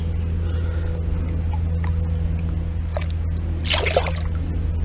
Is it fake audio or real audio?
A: real